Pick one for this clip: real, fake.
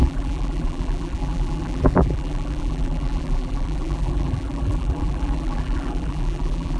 fake